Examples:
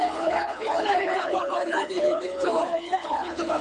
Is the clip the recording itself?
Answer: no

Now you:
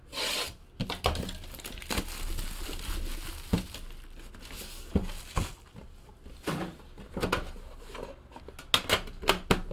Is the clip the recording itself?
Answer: yes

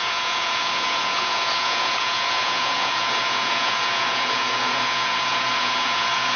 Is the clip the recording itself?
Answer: no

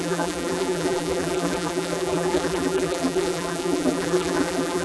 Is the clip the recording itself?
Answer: no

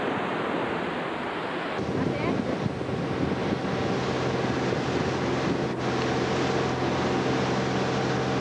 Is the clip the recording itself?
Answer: yes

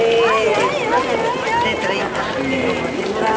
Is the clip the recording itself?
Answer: yes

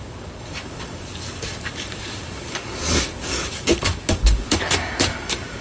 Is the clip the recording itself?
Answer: no